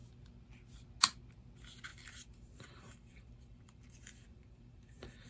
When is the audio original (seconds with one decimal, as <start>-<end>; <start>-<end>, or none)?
0.0-1.9